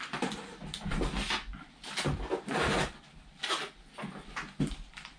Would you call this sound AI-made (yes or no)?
no